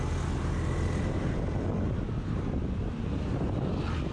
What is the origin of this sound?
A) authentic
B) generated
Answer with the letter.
A